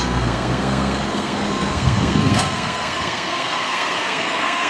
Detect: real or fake fake